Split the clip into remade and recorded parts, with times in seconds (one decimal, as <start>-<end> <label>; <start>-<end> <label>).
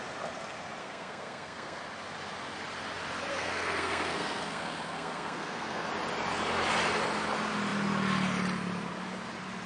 0.0-0.8 recorded; 0.8-1.8 remade; 1.8-3.3 recorded; 3.3-5.9 remade; 5.9-9.7 recorded